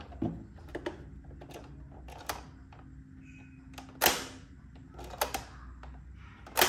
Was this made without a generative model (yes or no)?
yes